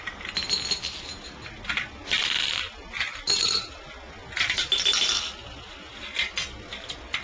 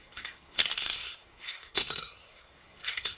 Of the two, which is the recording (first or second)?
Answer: first